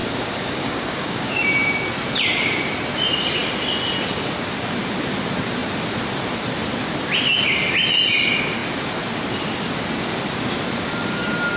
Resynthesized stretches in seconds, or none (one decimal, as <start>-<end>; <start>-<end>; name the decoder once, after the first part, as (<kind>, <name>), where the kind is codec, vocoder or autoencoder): 0.0-1.4 (codec, DAC)